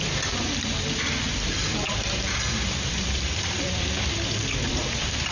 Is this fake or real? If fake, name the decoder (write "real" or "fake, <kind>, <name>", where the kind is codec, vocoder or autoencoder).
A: fake, vocoder, BigVGAN v2